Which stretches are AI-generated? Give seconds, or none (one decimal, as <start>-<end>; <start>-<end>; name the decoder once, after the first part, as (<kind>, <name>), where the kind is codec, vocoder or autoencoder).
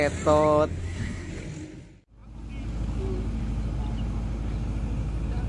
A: 0.8-1.3 (codec, SNAC)